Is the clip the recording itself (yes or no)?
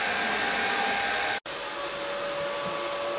yes